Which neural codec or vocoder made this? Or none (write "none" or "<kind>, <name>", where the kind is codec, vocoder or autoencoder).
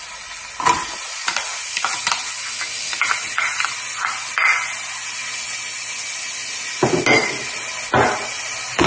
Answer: none